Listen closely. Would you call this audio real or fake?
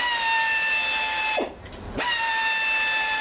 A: real